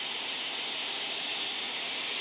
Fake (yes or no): no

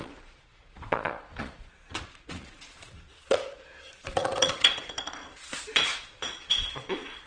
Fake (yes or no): yes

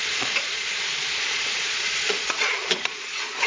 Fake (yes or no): yes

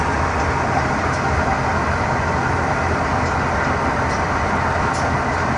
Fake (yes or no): no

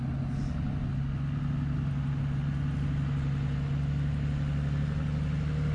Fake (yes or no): no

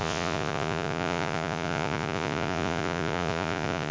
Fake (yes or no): yes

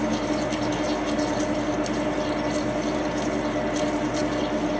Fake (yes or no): no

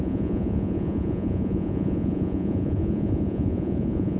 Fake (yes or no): yes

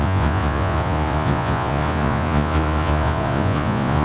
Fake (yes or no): yes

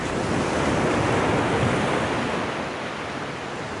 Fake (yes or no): no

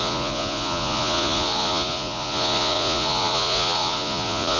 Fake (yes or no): yes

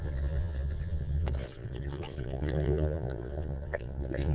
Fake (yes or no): yes